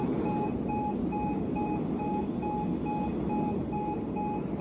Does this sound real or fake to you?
real